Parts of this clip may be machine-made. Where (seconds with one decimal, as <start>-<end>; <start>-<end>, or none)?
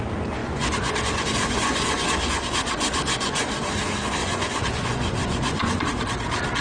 0.4-3.7; 4.2-5.8